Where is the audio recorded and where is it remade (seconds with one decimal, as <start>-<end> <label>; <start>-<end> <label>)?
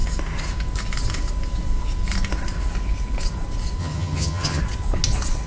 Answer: 0.0-3.8 recorded; 3.8-4.6 remade; 4.6-5.5 recorded